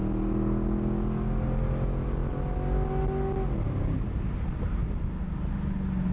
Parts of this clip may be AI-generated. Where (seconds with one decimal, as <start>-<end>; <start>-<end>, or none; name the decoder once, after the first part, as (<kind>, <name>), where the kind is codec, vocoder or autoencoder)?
none